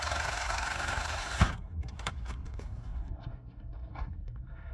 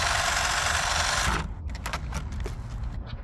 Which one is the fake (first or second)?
first